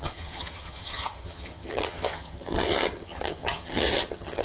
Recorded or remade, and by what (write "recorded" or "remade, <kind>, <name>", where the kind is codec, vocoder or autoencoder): remade, vocoder, HiFi-GAN